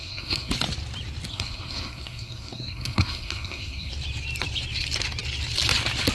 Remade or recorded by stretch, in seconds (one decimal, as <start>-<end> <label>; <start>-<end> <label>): 0.0-0.5 remade; 0.5-1.3 recorded; 1.3-3.9 remade; 3.9-6.1 recorded